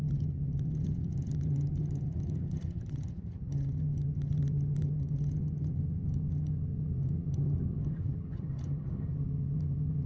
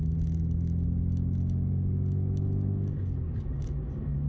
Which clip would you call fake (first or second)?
first